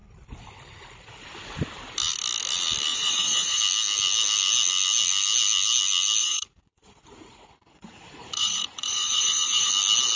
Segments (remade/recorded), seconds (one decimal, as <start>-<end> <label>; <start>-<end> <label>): 0.0-2.9 recorded; 2.9-3.6 remade; 3.6-6.2 recorded; 6.2-9.7 remade; 9.7-10.2 recorded